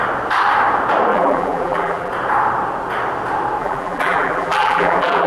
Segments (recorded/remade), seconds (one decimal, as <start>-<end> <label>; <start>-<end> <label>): 0.0-1.1 recorded; 1.1-2.1 remade; 2.1-3.6 recorded; 3.6-5.3 remade